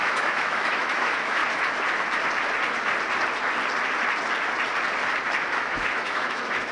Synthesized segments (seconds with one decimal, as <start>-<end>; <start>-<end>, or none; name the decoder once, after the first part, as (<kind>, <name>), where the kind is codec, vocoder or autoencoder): 0.0-1.4 (autoencoder, DAC-VAE); 5.4-6.7